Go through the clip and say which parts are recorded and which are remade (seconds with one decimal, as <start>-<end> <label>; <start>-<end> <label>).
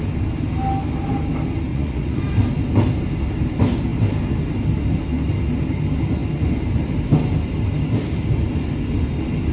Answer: 0.0-1.7 recorded; 1.7-2.2 remade; 2.2-9.5 recorded